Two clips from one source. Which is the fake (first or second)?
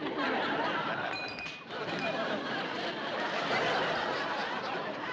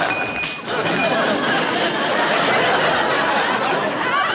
first